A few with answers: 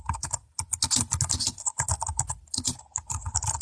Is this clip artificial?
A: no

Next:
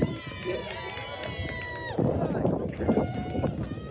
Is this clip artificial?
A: no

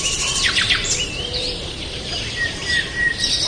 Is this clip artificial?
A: yes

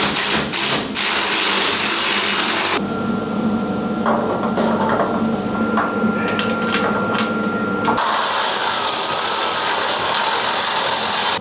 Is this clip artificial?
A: no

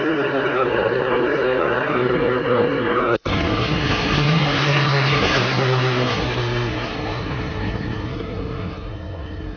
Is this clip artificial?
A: yes